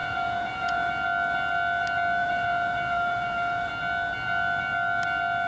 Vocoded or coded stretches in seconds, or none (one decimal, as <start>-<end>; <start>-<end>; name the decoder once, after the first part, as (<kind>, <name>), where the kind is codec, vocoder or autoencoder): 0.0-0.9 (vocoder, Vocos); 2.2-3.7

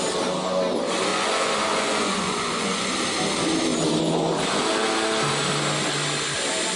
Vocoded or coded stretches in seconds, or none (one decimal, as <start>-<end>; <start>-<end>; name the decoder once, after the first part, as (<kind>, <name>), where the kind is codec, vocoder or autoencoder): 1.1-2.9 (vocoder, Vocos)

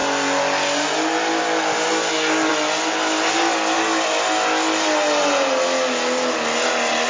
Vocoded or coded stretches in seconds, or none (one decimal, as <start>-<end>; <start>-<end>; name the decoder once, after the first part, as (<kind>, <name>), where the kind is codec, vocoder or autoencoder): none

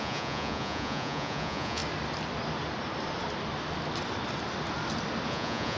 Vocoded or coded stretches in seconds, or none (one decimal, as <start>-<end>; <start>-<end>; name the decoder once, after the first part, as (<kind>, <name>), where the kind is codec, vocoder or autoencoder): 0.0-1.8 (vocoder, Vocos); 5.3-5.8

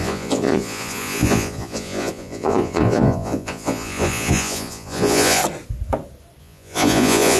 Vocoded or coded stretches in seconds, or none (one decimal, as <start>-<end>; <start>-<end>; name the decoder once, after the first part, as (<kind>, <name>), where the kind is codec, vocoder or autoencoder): 0.0-5.4 (vocoder, Vocos); 6.4-7.4

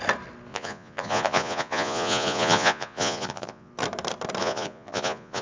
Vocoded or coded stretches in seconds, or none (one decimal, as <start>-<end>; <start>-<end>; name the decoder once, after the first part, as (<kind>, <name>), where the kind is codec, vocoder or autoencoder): 0.5-3.7 (vocoder, Vocos); 4.4-5.4

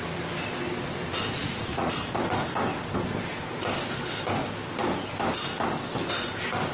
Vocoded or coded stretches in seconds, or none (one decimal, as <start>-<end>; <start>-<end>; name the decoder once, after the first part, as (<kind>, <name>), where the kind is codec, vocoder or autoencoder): 1.4-1.9 (vocoder, Vocos)